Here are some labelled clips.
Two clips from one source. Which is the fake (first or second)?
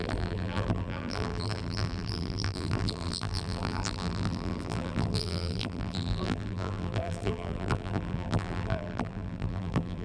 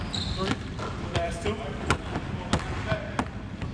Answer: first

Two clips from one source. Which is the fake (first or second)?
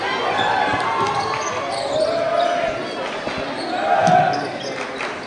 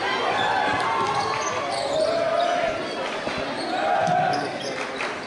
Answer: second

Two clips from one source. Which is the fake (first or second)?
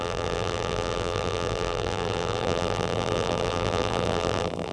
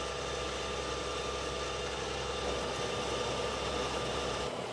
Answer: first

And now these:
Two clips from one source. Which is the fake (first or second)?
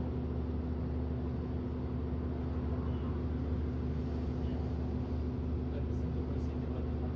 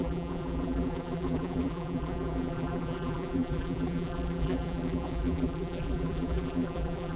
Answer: second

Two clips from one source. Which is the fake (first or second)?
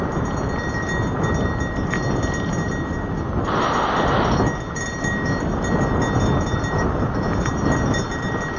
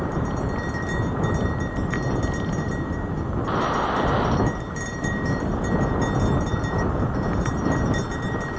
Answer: second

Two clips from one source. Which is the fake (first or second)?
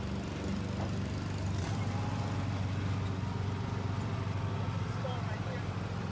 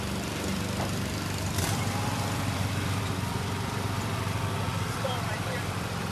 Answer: second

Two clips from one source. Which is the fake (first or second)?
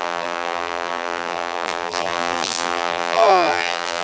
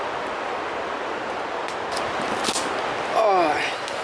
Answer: first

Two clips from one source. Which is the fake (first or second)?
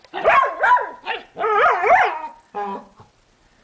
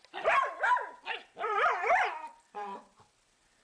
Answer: second